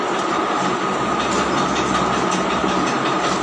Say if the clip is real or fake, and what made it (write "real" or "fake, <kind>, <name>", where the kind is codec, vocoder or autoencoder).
real